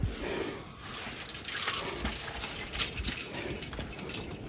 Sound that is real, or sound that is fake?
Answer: real